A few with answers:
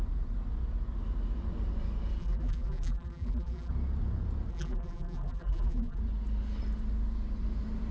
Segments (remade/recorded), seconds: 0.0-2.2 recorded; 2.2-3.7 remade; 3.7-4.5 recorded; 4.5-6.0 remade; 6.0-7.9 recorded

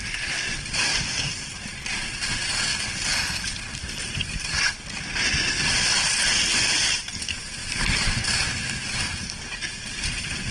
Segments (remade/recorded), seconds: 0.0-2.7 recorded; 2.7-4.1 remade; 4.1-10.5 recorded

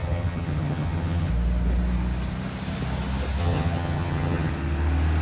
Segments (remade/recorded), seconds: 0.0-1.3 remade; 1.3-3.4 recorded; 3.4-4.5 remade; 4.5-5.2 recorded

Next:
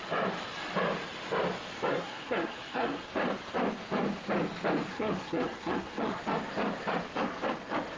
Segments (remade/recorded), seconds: 0.0-1.9 recorded; 1.9-3.1 remade; 3.1-4.9 recorded; 4.9-6.2 remade; 6.2-8.0 recorded

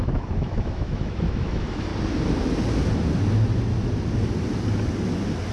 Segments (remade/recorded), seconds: 0.0-1.9 remade; 1.9-5.5 recorded

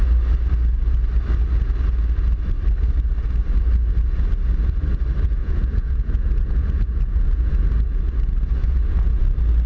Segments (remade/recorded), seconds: 0.0-5.4 recorded; 5.4-7.7 remade; 7.7-8.6 recorded; 8.6-9.2 remade; 9.2-9.7 recorded

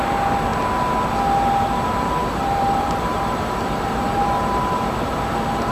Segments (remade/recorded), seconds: 0.0-2.2 recorded; 2.2-5.7 remade